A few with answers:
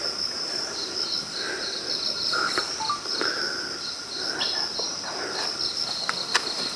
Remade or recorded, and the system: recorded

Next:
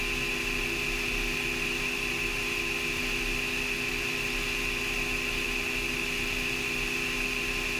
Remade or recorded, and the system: recorded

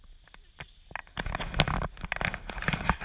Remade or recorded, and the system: recorded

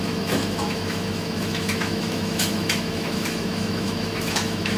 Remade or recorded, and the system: remade, autoencoder, DAC-VAE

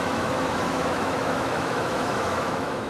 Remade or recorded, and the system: remade, autoencoder, DAC-VAE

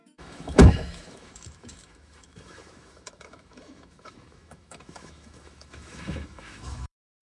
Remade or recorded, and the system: remade, autoencoder, DAC-VAE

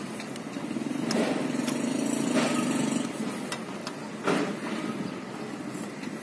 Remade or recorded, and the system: recorded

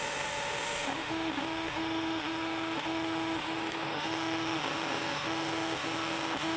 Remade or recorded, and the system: remade, autoencoder, DAC-VAE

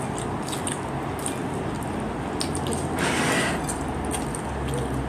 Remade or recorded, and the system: recorded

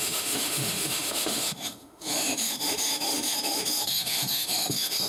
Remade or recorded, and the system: remade, autoencoder, DAC-VAE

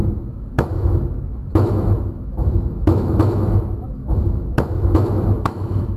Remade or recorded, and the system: remade, autoencoder, DAC-VAE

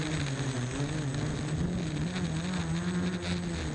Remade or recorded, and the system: recorded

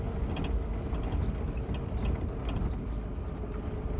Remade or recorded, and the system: recorded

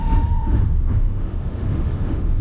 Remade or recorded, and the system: remade, autoencoder, DAC-VAE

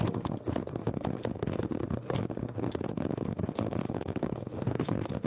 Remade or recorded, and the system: remade, autoencoder, DAC-VAE